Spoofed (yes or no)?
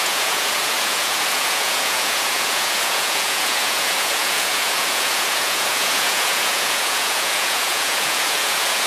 yes